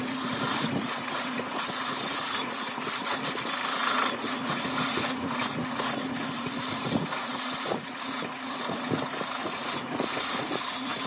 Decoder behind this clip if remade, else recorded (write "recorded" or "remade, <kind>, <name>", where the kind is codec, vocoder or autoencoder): remade, vocoder, Vocos